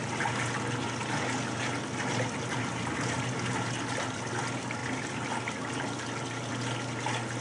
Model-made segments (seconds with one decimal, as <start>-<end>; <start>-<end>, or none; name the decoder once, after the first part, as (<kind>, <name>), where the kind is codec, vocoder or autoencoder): none